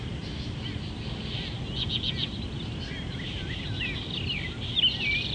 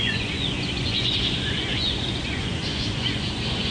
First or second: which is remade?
second